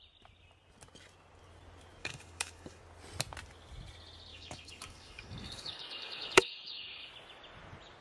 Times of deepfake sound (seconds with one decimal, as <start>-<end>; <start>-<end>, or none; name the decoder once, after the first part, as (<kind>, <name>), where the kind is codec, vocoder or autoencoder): 2.0-2.8 (codec, DAC); 4.3-7.1